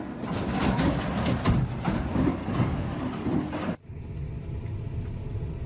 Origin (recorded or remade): recorded